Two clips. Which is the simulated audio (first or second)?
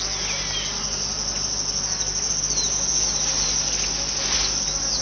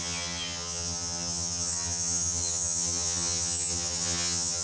second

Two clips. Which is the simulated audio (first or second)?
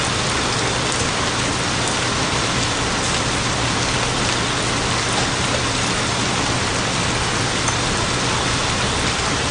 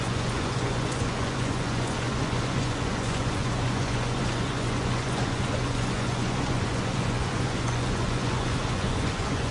second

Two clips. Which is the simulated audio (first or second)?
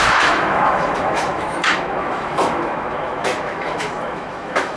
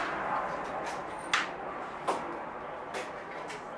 first